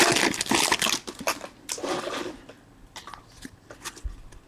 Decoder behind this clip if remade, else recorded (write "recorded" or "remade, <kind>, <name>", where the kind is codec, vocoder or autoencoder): recorded